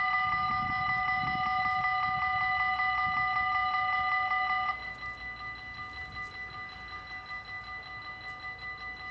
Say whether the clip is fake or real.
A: real